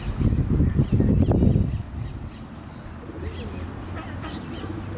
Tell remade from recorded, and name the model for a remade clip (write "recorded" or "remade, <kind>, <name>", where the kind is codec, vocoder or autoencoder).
recorded